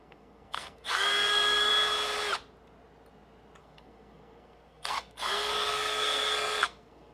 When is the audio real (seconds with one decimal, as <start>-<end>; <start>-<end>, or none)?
1.7-3.6